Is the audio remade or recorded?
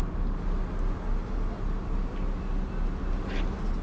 recorded